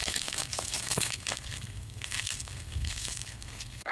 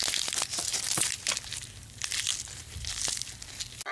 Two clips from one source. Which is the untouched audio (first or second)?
second